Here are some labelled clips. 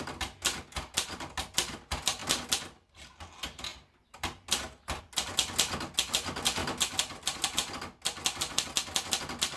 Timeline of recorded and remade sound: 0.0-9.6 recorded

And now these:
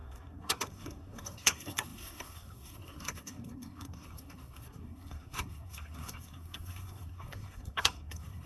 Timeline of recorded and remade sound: 0.0-8.5 remade

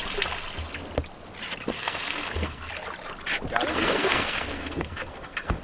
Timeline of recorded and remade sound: 0.0-1.7 recorded; 1.7-2.7 remade; 2.7-3.7 recorded; 3.7-5.6 remade

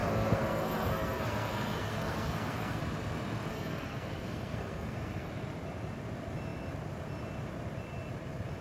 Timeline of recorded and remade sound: 0.0-2.8 remade; 2.8-3.5 recorded; 3.5-5.3 remade; 5.3-8.6 recorded

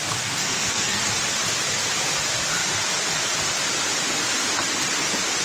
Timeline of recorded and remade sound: 0.0-0.4 recorded; 0.4-1.0 remade; 1.0-5.4 recorded